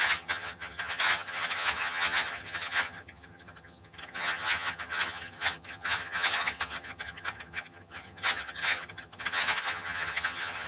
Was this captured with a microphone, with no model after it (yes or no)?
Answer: no